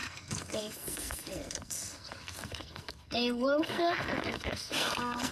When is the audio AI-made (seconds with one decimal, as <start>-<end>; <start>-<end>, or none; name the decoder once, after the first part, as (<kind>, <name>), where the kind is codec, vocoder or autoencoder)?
0.0-5.3 (codec, SNAC)